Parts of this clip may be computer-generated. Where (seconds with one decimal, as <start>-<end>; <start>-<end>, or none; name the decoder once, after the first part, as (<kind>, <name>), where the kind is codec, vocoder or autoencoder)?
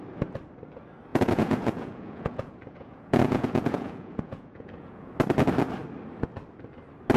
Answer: 1.1-5.1 (vocoder, Vocos)